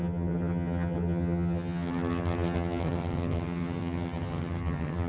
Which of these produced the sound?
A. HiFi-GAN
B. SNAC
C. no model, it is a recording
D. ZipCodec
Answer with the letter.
A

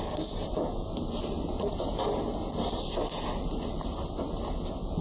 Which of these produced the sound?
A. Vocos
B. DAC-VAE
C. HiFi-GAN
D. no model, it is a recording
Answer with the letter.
D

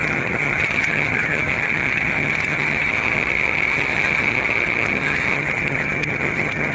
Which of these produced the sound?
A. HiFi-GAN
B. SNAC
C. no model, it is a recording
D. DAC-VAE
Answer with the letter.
A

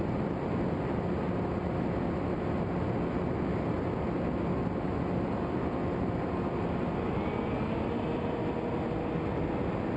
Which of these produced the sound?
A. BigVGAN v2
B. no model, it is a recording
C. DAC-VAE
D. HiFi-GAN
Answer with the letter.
B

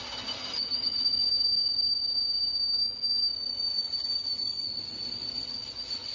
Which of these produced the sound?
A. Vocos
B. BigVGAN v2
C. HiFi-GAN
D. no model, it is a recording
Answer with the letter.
D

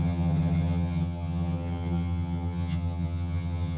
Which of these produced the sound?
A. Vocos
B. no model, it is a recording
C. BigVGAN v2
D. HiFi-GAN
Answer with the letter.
D